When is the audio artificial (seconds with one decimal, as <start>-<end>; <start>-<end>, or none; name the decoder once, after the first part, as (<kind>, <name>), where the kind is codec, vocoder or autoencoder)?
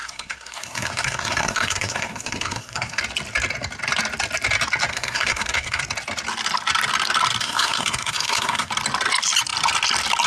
0.0-3.0 (codec, SNAC); 4.9-5.8; 7.4-8.7